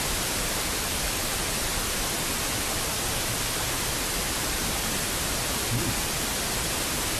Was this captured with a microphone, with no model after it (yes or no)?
yes